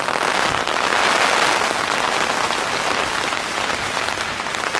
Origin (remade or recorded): recorded